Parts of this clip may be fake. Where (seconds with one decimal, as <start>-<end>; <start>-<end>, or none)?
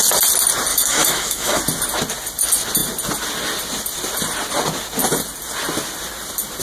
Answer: 0.7-1.6